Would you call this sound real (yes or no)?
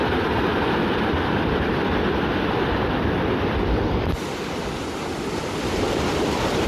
no